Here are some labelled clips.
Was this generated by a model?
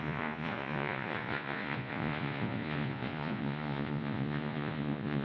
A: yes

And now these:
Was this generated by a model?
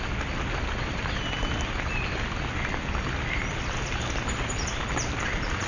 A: no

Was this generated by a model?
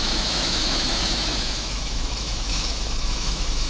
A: yes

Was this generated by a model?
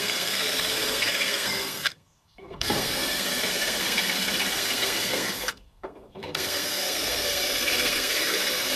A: yes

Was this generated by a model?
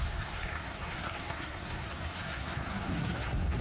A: yes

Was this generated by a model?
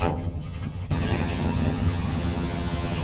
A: yes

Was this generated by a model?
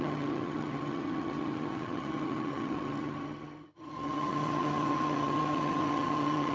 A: yes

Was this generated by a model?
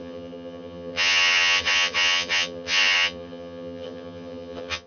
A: yes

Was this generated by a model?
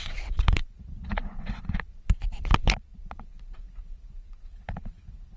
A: yes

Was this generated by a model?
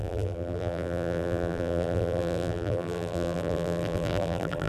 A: yes